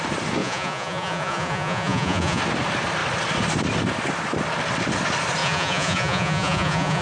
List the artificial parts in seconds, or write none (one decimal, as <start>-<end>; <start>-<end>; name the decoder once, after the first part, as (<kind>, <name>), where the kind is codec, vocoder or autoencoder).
0.4-2.4 (vocoder, Vocos); 5.4-7.0